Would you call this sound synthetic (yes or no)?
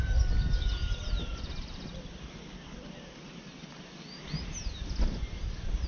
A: no